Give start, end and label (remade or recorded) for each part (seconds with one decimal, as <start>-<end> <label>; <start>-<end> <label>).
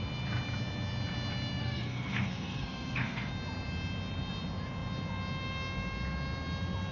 0.0-1.6 recorded; 1.6-3.3 remade; 3.3-6.9 recorded